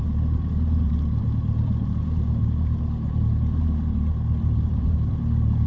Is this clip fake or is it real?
fake